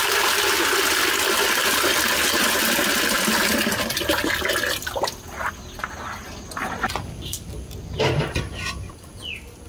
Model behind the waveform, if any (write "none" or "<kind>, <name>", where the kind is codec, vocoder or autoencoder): none